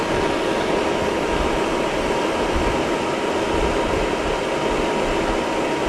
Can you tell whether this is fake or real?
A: real